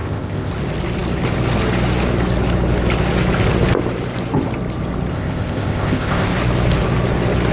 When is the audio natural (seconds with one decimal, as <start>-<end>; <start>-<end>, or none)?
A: 0.5-5.1; 6.3-7.5